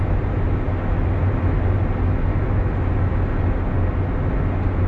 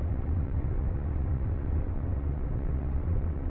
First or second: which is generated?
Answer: second